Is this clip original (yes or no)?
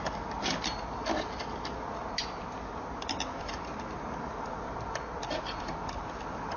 yes